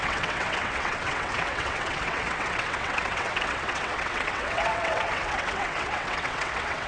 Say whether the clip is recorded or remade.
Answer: remade